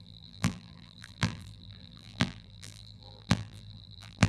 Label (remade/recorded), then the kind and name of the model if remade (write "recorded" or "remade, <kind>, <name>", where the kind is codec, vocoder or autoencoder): remade, vocoder, BigVGAN v2